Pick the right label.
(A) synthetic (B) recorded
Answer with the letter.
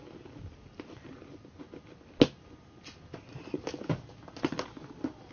B